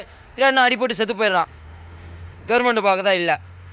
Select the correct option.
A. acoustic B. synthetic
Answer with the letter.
B